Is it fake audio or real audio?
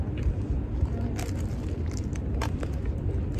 real